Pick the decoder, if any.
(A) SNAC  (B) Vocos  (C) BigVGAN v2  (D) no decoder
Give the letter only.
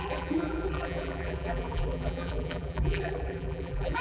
C